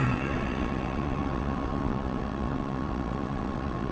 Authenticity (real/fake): fake